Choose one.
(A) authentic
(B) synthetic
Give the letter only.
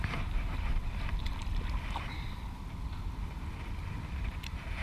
A